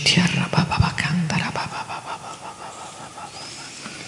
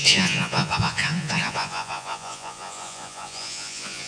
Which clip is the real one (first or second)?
first